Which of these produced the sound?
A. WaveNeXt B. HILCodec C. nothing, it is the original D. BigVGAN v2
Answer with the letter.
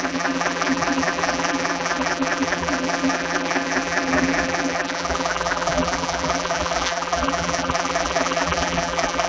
D